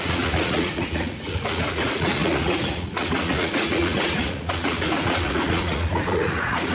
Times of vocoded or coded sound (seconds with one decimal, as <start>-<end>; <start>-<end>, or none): 0.0-6.7